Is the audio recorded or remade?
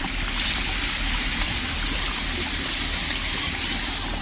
recorded